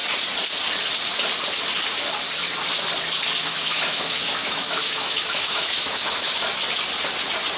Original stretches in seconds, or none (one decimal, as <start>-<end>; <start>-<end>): 0.0-3.5; 6.3-7.6

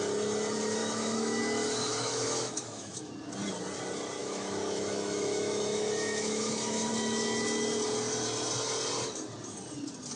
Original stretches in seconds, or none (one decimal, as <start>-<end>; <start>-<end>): 0.0-0.8; 1.4-1.9; 3.1-4.2; 6.9-10.2

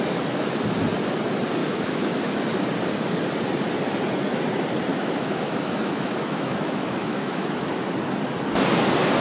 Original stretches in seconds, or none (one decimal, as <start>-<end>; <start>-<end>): 0.0-1.6; 2.2-4.9; 7.7-9.2

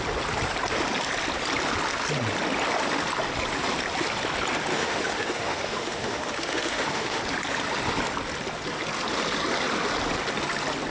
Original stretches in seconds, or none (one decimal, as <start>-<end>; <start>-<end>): 0.0-4.7; 7.2-10.9

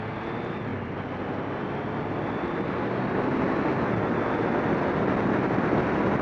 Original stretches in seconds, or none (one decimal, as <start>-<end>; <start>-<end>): 0.0-6.2